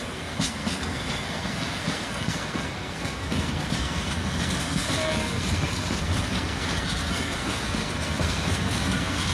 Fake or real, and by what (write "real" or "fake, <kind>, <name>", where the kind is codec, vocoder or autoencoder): fake, codec, SNAC